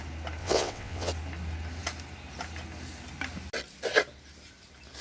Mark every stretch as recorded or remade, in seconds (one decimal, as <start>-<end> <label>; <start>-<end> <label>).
0.0-0.4 recorded; 0.4-1.1 remade; 1.1-5.0 recorded